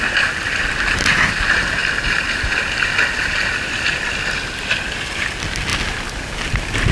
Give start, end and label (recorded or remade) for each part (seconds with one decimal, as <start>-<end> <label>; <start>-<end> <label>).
0.0-5.7 remade; 5.7-6.9 recorded